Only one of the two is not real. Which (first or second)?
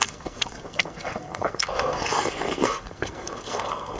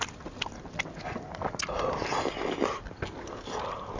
first